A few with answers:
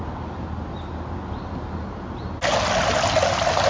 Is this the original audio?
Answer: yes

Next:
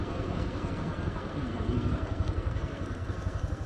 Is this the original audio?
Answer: no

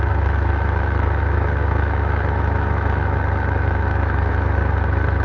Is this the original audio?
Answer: no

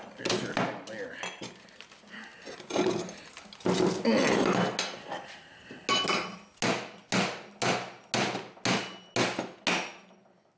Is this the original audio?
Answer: yes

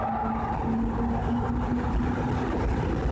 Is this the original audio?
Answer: yes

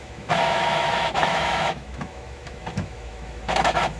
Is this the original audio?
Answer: no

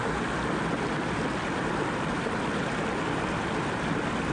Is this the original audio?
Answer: yes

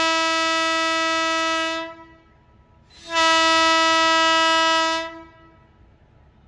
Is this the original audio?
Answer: yes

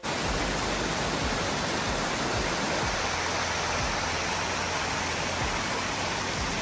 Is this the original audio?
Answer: yes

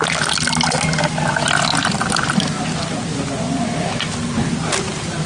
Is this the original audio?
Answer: yes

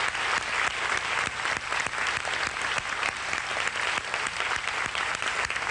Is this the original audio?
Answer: yes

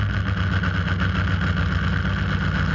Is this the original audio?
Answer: yes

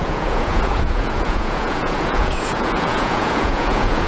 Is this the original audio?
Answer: no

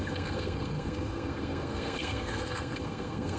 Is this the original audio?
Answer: no